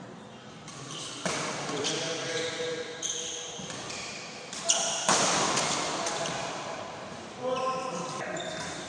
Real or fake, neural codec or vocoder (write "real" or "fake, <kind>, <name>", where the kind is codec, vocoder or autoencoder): fake, vocoder, BigVGAN v2